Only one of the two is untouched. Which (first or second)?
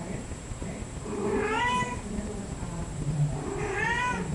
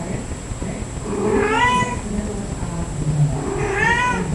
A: second